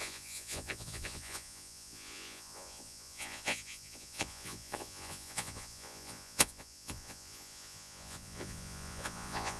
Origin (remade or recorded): remade